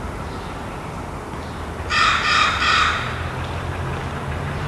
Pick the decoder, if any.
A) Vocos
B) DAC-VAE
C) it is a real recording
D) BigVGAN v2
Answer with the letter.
C